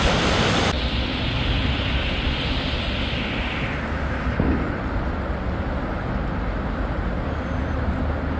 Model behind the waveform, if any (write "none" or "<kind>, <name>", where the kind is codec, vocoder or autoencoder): none